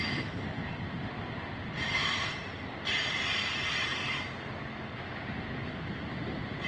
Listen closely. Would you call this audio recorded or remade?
recorded